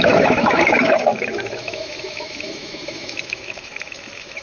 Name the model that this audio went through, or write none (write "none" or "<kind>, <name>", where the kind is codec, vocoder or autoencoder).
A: autoencoder, DAC-VAE